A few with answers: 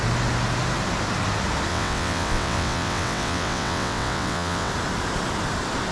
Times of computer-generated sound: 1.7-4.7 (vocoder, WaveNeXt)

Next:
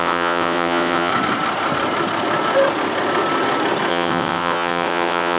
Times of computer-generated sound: 0.0-1.1 (vocoder, WaveNeXt); 3.9-5.4

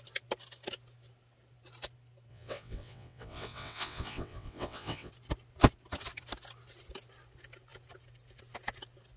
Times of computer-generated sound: 2.3-5.1 (vocoder, WaveNeXt)

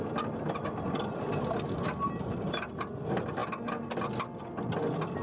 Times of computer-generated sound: none

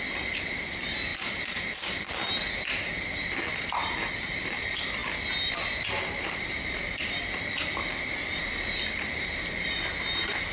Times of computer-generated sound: none